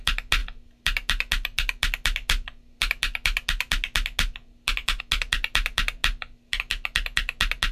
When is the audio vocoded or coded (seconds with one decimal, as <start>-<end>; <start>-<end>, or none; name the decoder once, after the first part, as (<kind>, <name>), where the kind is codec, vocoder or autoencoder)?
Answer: none